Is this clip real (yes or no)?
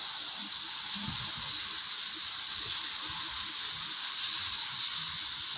yes